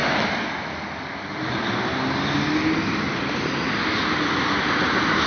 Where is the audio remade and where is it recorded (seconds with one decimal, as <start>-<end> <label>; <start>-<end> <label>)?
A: 0.0-5.3 recorded